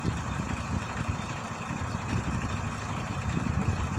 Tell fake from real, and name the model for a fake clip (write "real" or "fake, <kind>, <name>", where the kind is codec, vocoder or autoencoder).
fake, vocoder, BigVGAN v2